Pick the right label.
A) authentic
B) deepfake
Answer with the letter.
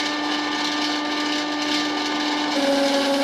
A